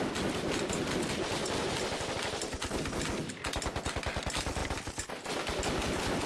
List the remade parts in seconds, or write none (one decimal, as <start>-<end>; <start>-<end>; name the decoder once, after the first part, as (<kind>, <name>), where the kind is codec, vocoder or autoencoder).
none